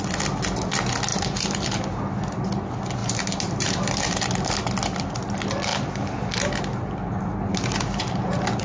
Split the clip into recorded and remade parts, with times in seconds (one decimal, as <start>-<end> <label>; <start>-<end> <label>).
0.0-1.1 recorded; 1.1-2.0 remade; 2.0-3.0 recorded; 3.0-3.9 remade; 3.9-8.6 recorded